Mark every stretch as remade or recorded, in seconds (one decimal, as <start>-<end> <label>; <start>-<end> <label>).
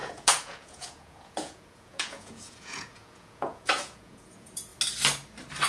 0.0-4.7 remade; 4.7-5.7 recorded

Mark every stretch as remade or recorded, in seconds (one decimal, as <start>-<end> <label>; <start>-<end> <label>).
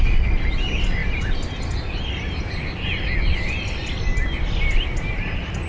0.0-5.7 recorded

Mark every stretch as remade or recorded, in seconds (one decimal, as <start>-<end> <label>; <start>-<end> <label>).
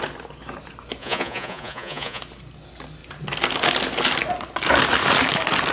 0.0-1.0 recorded; 1.0-2.2 remade; 2.2-5.7 recorded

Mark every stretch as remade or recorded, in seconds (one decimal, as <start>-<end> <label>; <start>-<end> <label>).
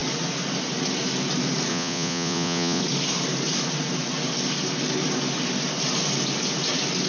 0.0-1.7 recorded; 1.7-2.8 remade; 2.8-7.1 recorded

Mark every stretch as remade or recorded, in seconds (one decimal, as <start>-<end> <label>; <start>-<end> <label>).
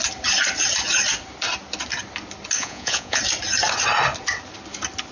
0.0-2.6 recorded; 2.6-3.2 remade; 3.2-5.1 recorded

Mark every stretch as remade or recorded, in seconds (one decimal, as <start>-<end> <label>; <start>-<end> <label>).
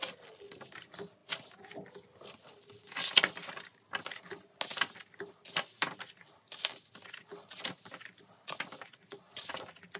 0.0-9.0 recorded; 9.0-9.5 remade; 9.5-10.0 recorded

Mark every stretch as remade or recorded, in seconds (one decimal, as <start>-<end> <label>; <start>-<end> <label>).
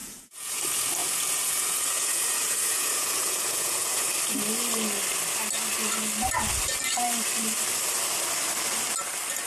0.0-0.6 remade; 0.6-1.0 recorded; 1.0-4.1 remade; 4.1-9.5 recorded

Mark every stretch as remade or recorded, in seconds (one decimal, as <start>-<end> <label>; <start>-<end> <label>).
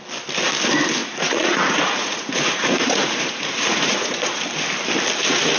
0.0-1.0 recorded; 1.0-4.4 remade; 4.4-5.6 recorded